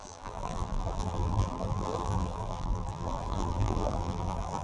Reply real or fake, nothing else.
fake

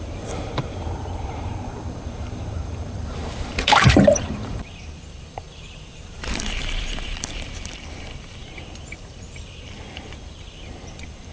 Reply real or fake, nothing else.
fake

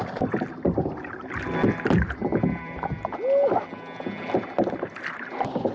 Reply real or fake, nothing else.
real